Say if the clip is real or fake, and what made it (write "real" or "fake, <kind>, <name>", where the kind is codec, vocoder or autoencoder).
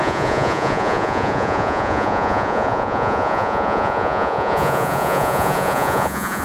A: fake, vocoder, Vocos